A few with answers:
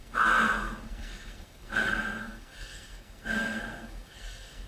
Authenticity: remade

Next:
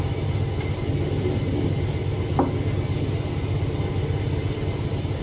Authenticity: recorded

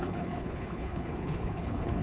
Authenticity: remade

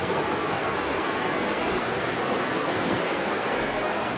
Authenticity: remade